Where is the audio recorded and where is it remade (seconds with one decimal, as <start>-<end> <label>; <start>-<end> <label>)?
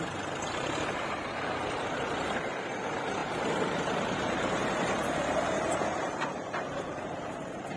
0.0-7.8 remade